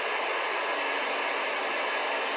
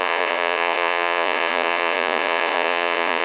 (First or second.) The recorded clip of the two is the first